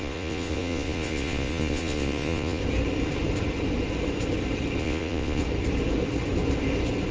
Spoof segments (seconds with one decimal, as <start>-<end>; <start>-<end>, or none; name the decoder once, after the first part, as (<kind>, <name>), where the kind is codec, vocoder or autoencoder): 0.0-2.6 (vocoder, Vocos); 4.8-5.4